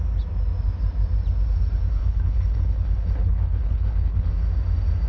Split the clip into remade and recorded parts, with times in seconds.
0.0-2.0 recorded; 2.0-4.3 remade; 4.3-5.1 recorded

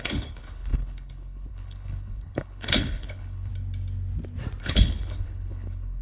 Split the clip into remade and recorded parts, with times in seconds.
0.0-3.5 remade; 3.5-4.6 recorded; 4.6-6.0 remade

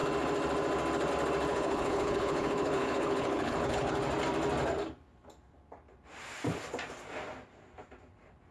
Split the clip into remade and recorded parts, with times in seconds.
0.0-1.5 recorded; 1.5-4.0 remade; 4.0-8.5 recorded